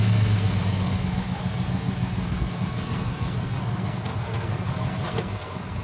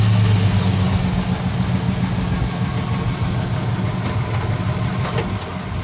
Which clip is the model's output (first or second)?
first